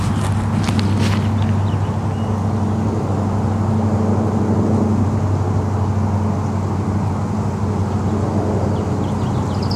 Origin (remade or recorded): recorded